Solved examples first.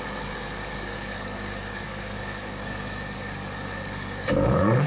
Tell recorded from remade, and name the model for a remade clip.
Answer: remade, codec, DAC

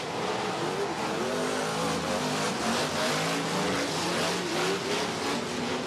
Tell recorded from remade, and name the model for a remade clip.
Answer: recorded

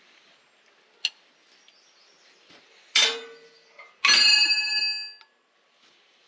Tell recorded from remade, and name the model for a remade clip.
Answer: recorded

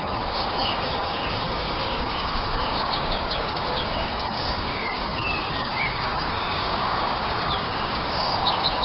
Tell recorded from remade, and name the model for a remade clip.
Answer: remade, codec, DAC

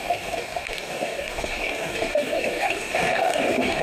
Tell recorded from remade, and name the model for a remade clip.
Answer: remade, codec, DAC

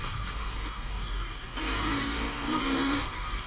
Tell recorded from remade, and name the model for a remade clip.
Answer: remade, codec, DAC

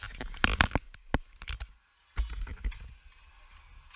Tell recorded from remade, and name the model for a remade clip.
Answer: recorded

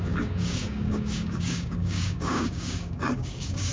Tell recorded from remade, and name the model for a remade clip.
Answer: remade, codec, DAC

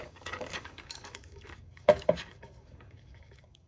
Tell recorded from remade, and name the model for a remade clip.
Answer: remade, codec, DAC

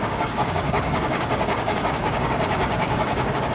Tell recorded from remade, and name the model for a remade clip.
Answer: remade, codec, DAC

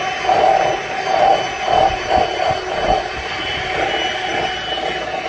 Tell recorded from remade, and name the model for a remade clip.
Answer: recorded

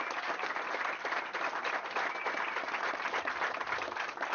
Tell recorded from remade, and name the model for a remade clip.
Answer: recorded